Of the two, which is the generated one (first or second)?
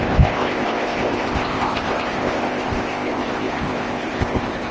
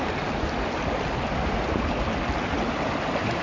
first